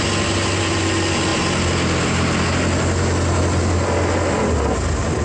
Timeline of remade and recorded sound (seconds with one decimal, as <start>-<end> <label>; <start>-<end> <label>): 0.0-5.2 recorded